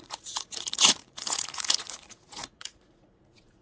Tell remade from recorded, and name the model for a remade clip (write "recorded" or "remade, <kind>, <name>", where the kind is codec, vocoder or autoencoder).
remade, vocoder, Vocos